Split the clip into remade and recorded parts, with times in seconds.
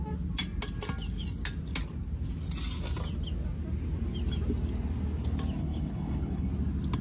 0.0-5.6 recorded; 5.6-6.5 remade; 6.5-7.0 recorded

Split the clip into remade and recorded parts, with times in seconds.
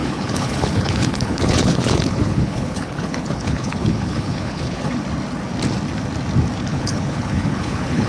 0.0-4.9 remade; 4.9-6.7 recorded; 6.7-8.1 remade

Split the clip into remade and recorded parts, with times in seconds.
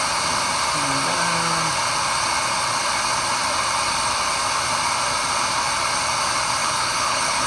0.0-6.6 recorded; 6.6-7.5 remade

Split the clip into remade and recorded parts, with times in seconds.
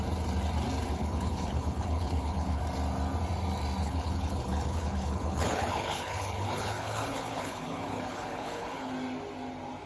0.0-1.0 recorded; 1.0-2.6 remade; 2.6-3.8 recorded; 3.8-8.9 remade; 8.9-9.9 recorded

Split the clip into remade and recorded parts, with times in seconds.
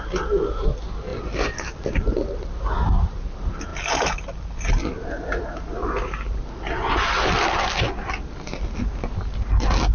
0.0-9.9 recorded